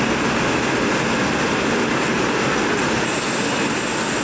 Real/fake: real